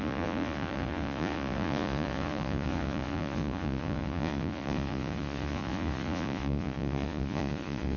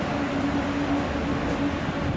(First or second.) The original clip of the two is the second